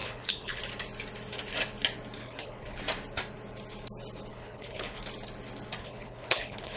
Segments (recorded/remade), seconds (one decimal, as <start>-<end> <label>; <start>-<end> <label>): 0.0-0.6 remade; 0.6-2.2 recorded; 2.2-2.8 remade; 2.8-4.3 recorded; 4.3-5.0 remade; 5.0-5.8 recorded; 5.8-6.8 remade